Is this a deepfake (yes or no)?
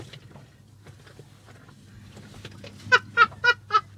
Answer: no